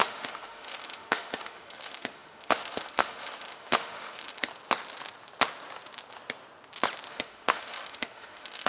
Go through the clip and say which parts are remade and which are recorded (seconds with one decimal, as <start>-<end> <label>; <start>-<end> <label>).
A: 0.0-4.5 remade; 4.5-7.1 recorded; 7.1-8.7 remade